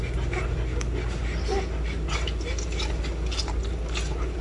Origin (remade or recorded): recorded